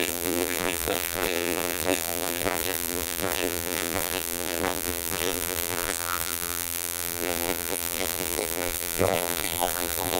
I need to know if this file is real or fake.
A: fake